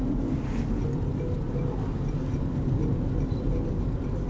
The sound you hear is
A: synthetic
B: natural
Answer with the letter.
B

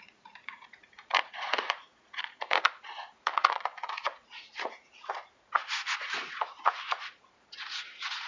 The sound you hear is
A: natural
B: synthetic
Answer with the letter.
B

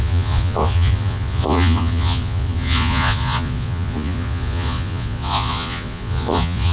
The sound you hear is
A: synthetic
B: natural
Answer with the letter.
A